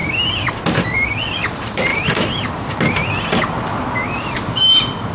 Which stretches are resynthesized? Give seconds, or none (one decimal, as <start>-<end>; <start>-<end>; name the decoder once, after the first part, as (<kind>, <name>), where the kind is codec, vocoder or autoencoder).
none